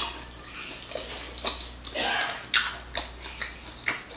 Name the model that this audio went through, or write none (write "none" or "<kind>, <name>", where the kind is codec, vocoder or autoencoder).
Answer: none